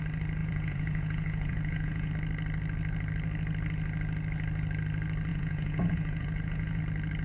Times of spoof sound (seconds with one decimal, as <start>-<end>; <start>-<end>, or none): 0.4-2.1; 5.3-6.8